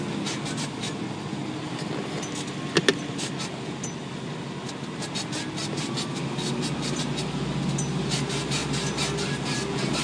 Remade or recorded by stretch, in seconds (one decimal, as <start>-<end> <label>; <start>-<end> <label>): 0.0-10.0 recorded